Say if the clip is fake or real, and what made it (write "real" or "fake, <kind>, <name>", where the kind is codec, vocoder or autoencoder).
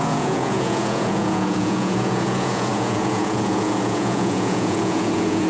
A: fake, vocoder, Vocos